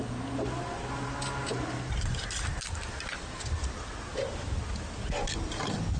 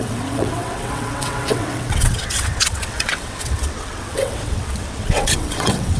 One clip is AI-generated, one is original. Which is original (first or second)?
first